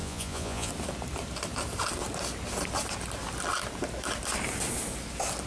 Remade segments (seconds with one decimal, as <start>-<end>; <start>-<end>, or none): 0.0-0.7